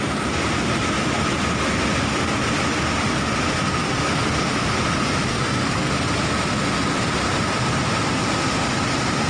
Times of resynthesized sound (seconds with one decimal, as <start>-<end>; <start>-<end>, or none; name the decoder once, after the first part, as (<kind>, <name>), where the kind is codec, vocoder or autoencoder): 5.3-5.9 (codec, SNAC)